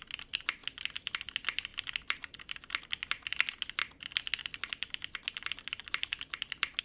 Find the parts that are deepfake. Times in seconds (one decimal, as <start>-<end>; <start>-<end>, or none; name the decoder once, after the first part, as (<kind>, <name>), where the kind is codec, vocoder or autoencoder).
none